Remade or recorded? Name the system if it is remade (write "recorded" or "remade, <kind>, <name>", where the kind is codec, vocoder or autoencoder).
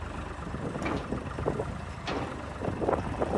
remade, vocoder, BigVGAN v2